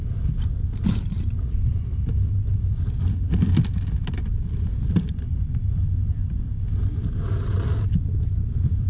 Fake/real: real